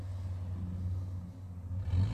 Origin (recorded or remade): recorded